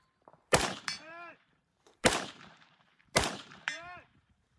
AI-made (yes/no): yes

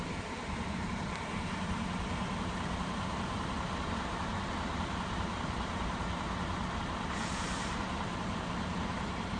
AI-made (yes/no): yes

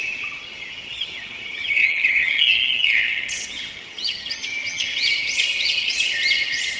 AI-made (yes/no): yes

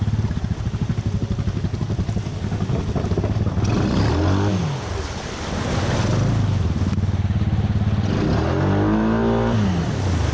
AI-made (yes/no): no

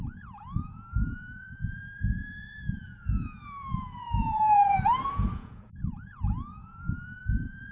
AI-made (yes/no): yes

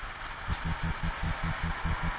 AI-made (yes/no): no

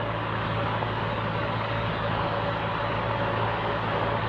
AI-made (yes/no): yes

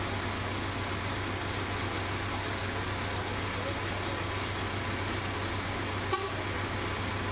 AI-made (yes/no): no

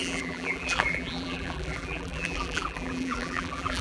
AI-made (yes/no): yes